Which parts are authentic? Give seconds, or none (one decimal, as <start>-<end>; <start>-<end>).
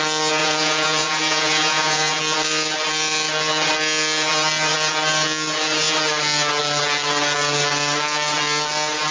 0.0-0.4; 2.2-9.1